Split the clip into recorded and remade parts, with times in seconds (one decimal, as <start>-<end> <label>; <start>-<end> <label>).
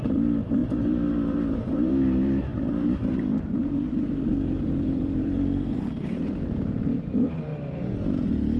0.0-7.5 remade; 7.5-8.6 recorded